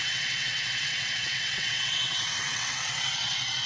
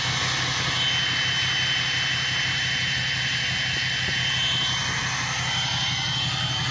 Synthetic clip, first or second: first